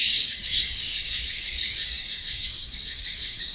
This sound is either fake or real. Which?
fake